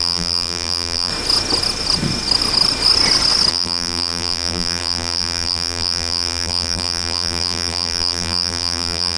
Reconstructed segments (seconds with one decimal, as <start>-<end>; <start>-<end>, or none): 0.0-1.1; 3.5-9.2